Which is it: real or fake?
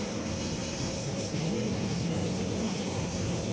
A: fake